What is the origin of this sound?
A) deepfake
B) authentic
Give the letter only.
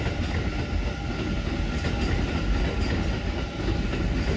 B